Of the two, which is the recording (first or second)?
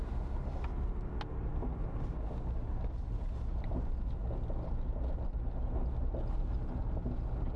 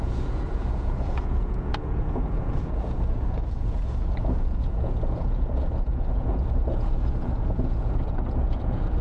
first